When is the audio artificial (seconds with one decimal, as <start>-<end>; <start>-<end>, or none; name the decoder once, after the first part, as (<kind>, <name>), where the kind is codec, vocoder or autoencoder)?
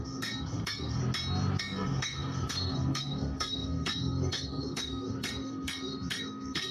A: 0.0-1.0 (codec, SNAC); 1.6-6.7